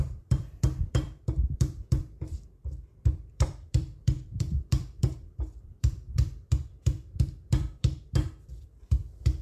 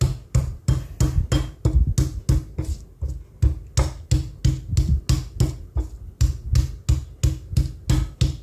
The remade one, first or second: first